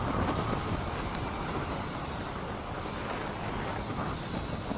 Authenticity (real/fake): real